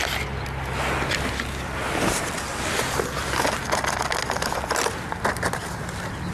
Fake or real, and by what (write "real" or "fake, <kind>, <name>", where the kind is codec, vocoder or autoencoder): real